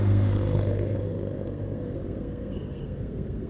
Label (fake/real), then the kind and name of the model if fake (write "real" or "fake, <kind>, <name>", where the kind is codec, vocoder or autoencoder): fake, codec, SNAC